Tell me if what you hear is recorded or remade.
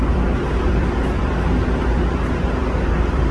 remade